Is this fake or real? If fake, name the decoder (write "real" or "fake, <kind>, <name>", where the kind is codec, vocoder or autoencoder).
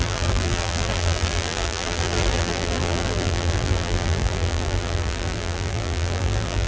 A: fake, vocoder, BigVGAN v2